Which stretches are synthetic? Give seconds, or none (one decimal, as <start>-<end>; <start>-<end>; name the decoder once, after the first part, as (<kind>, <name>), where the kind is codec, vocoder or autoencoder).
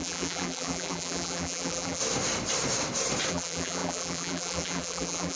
0.0-2.0 (vocoder, BigVGAN v2); 3.3-5.4